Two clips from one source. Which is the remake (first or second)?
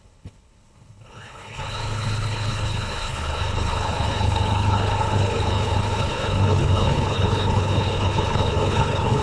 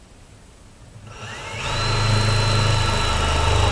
first